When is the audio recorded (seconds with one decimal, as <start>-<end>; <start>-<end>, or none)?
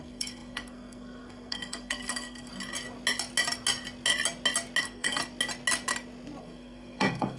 2.5-4.8; 5.2-6.4